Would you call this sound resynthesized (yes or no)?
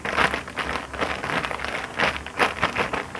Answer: no